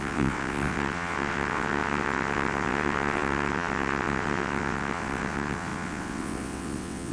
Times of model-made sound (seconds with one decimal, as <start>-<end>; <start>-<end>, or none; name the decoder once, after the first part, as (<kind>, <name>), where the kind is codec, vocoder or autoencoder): 0.0-7.1 (vocoder, WaveNeXt)